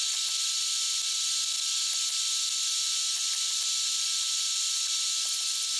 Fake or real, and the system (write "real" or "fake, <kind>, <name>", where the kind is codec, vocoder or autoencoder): real